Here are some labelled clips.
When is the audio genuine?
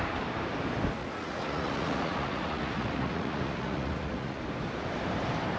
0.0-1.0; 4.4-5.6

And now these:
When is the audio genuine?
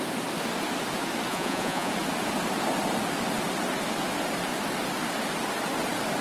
0.0-1.3; 1.9-6.2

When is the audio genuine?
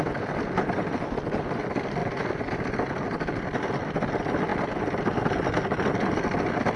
0.0-6.8